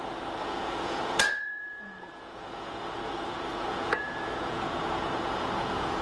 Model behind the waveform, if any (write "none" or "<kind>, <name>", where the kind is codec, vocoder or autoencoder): vocoder, Vocos